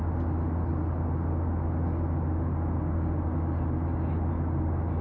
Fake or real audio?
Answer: real